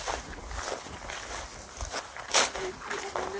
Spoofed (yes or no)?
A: no